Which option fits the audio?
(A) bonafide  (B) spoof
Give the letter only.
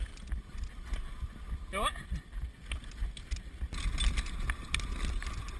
A